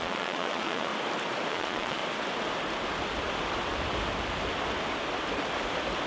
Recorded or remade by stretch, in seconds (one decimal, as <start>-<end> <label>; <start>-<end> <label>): 0.0-0.9 remade; 0.9-1.5 recorded; 1.5-2.0 remade; 2.0-6.1 recorded